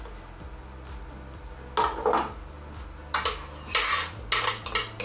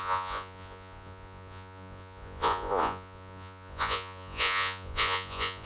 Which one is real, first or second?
first